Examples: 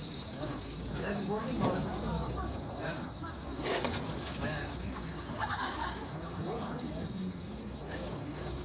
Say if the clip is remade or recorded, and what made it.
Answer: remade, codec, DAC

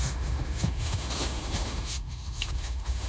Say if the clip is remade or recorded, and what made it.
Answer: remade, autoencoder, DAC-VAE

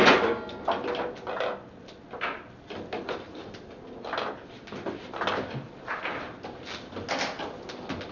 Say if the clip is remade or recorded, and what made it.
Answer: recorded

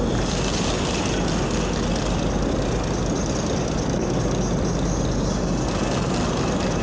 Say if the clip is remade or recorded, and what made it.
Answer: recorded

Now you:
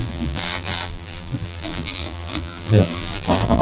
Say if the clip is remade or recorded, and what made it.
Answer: remade, vocoder, BigVGAN v2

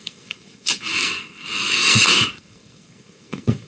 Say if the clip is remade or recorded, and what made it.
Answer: remade, codec, SNAC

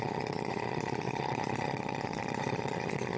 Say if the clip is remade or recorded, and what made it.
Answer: remade, vocoder, Vocos